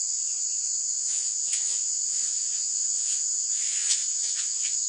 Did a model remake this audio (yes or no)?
yes